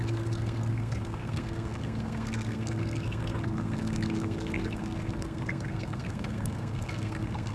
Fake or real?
fake